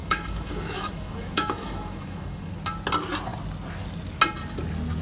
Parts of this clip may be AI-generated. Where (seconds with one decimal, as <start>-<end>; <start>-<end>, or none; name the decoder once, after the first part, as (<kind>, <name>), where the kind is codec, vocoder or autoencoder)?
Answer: 0.0-2.5 (autoencoder, DAC-VAE)